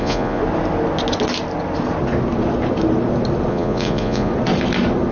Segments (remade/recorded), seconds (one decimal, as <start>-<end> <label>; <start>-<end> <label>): 0.0-0.4 remade; 0.4-3.5 recorded; 3.5-4.3 remade; 4.3-5.1 recorded